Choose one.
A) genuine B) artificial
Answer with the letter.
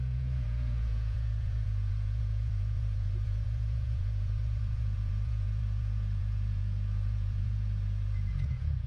B